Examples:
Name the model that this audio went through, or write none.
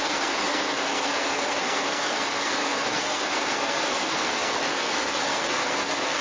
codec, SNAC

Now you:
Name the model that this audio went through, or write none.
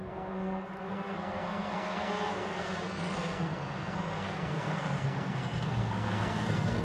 codec, SNAC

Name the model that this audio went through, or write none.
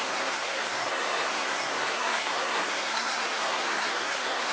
codec, SNAC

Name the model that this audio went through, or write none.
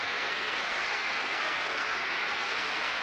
codec, SNAC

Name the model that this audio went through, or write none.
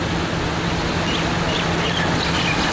none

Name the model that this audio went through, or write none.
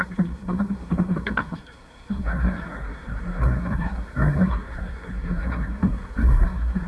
codec, SNAC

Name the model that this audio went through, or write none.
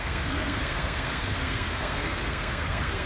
codec, SNAC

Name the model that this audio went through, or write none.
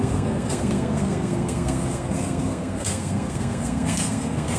codec, SNAC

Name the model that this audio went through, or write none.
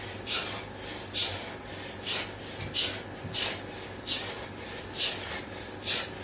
none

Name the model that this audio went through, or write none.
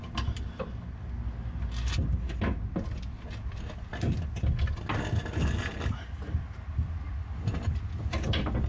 none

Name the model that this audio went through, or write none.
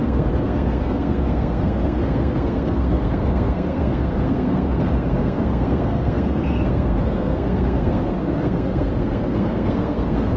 codec, SNAC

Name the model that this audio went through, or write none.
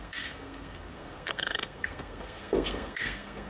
codec, SNAC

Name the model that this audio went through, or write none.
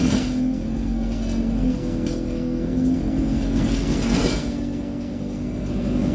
codec, SNAC